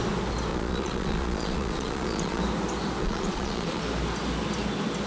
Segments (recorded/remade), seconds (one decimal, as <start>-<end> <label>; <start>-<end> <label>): 0.0-0.5 recorded; 0.5-2.4 remade; 2.4-3.0 recorded; 3.0-3.8 remade; 3.8-5.1 recorded